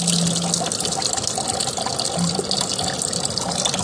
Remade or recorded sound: recorded